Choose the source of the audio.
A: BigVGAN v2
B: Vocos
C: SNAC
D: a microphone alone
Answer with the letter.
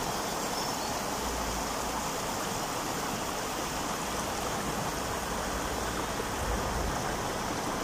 D